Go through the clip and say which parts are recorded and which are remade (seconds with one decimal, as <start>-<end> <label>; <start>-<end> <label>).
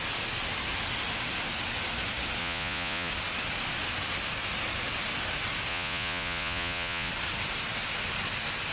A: 0.0-2.4 recorded; 2.4-3.1 remade; 3.1-5.7 recorded; 5.7-7.1 remade; 7.1-8.7 recorded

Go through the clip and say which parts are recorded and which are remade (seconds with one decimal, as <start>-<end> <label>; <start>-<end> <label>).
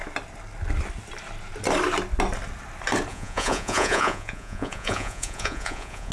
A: 0.0-3.1 recorded; 3.1-6.1 remade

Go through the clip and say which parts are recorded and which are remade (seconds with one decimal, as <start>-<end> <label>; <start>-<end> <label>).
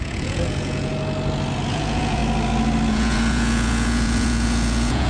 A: 0.0-0.9 remade; 0.9-1.7 recorded; 1.7-2.2 remade; 2.2-2.9 recorded; 2.9-5.1 remade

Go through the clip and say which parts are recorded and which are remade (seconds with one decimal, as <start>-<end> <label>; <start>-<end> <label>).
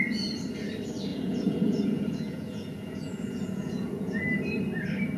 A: 0.0-1.1 recorded; 1.1-4.2 remade; 4.2-5.2 recorded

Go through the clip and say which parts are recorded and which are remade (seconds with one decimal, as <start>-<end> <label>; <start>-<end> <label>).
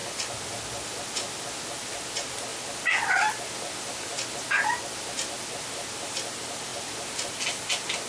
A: 0.0-8.1 recorded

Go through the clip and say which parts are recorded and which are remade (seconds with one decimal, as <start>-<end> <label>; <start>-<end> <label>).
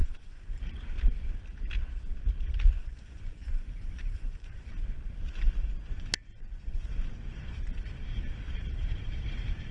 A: 0.0-0.6 remade; 0.6-2.8 recorded; 2.8-4.7 remade; 4.7-6.3 recorded; 6.3-6.9 remade; 6.9-9.7 recorded